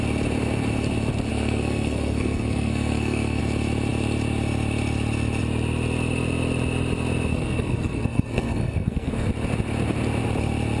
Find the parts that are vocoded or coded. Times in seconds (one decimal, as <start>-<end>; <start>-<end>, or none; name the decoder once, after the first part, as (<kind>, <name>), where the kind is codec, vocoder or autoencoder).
1.3-3.4 (codec, SNAC); 7.3-9.3